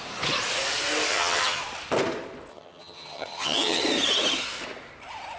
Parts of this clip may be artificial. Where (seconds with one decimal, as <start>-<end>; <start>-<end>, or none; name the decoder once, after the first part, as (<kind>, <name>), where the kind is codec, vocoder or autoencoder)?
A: 1.1-1.6 (vocoder, HiFi-GAN); 2.5-3.8